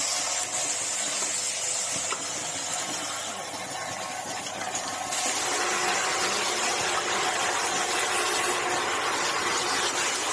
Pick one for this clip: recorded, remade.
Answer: recorded